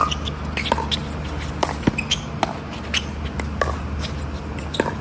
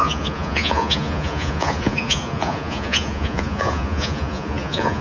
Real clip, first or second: first